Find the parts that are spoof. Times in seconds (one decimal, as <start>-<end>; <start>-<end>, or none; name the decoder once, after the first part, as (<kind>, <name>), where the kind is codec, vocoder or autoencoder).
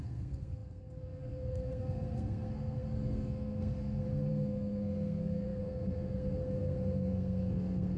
0.0-8.0 (codec, SNAC)